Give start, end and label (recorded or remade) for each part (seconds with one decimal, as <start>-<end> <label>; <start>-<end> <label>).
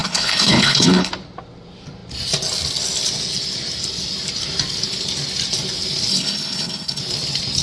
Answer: 0.0-1.1 remade; 1.1-6.1 recorded; 6.1-7.0 remade; 7.0-7.6 recorded